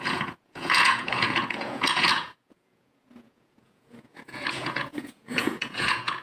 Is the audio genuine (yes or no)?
no